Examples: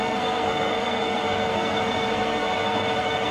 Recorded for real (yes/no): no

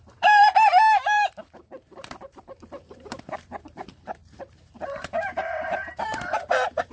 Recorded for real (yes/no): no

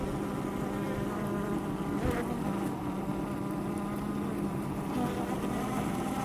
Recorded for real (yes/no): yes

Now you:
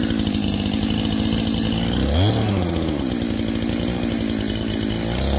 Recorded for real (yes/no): yes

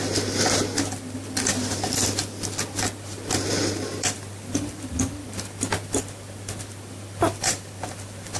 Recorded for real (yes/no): no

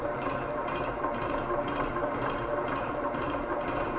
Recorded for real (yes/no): no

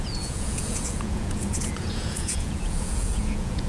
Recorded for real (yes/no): no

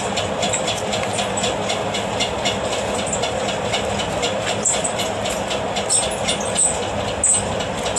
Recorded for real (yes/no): yes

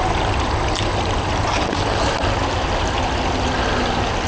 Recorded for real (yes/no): yes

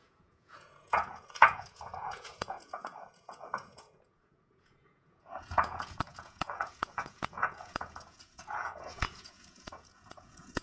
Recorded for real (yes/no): no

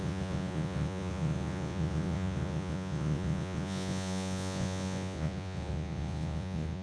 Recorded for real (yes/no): no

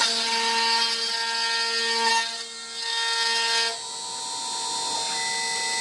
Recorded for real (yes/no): yes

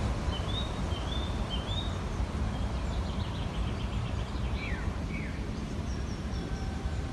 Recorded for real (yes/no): no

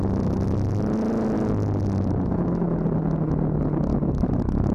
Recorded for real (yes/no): yes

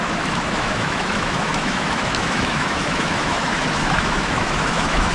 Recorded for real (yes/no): no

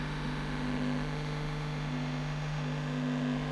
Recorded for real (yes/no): no